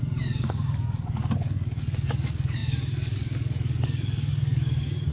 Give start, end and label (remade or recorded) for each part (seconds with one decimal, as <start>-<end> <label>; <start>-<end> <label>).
0.0-5.1 remade